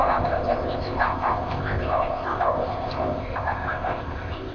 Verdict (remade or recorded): remade